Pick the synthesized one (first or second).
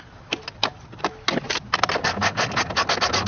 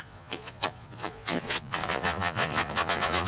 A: second